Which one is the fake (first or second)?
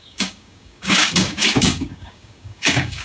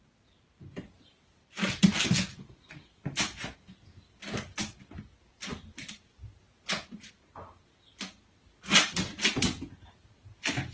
first